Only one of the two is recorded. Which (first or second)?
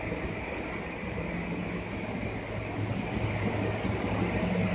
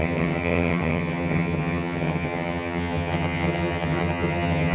first